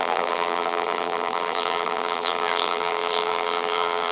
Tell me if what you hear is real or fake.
fake